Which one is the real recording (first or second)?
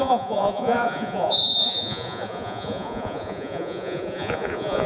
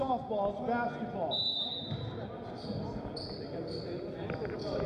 second